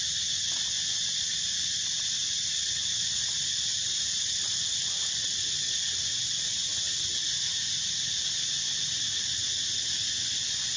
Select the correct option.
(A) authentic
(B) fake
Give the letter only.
A